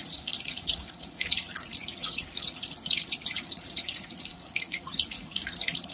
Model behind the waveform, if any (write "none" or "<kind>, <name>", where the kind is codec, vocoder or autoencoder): vocoder, Vocos